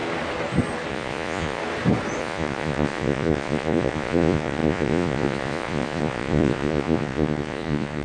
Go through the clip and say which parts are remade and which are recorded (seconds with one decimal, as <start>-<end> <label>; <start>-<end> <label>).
0.0-0.9 recorded; 0.9-1.6 remade; 1.6-2.2 recorded; 2.2-8.0 remade